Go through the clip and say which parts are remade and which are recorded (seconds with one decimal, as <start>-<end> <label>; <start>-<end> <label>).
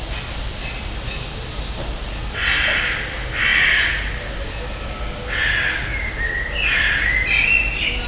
0.0-8.1 recorded